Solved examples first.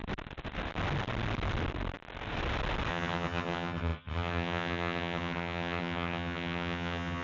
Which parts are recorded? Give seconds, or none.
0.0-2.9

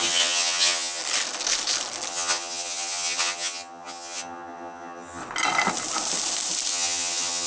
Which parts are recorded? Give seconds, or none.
1.0-2.1; 5.2-6.7

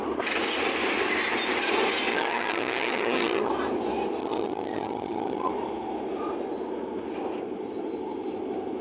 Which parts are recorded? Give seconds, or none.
0.0-2.1; 3.5-4.2; 5.5-8.8

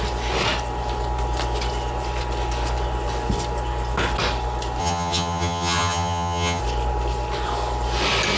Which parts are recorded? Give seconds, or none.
0.0-4.8; 6.6-8.4

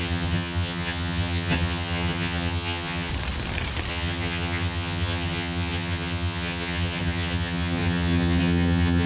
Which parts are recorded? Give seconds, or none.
3.1-3.9

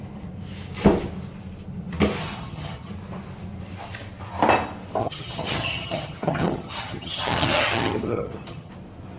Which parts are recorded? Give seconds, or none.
0.0-2.2; 2.9-5.0; 8.7-9.2

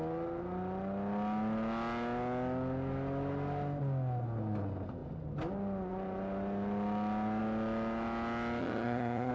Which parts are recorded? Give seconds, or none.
0.0-8.6